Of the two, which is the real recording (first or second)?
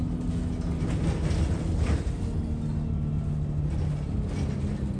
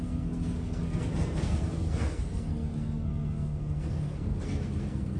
first